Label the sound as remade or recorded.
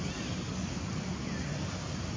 recorded